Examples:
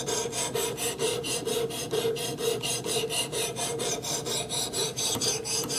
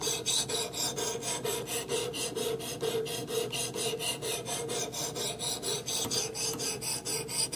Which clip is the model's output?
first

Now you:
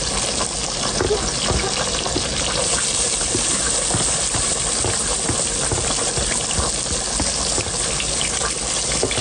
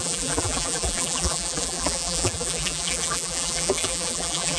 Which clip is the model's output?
second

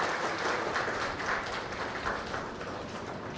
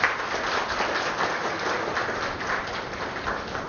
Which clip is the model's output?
second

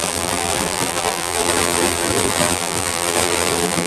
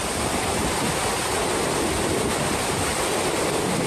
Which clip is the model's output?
first